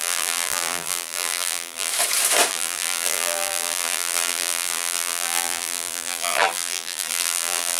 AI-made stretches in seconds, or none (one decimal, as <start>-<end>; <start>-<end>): 0.0-1.9; 2.5-7.8

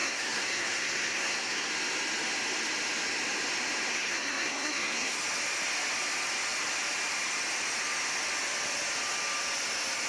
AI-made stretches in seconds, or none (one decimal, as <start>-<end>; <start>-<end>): 0.0-1.7; 3.9-5.2

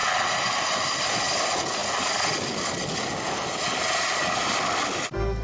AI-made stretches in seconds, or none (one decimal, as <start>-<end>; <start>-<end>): none

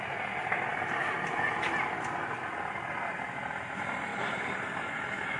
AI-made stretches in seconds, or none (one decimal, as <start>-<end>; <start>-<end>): 4.1-4.9